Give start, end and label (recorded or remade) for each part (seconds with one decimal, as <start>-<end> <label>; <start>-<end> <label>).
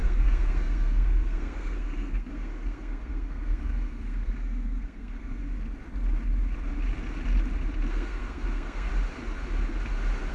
0.0-5.4 remade; 5.4-7.9 recorded; 7.9-8.9 remade; 8.9-10.3 recorded